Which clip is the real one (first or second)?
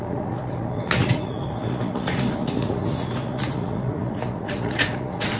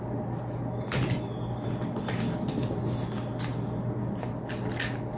second